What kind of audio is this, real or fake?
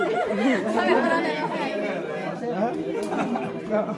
real